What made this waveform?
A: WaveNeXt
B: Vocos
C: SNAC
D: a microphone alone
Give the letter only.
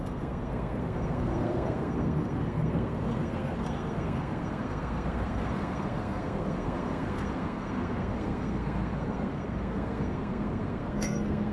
C